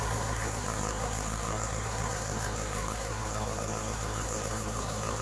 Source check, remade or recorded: remade